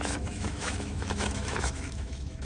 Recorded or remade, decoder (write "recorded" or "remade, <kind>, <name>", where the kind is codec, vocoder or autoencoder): remade, autoencoder, DAC-VAE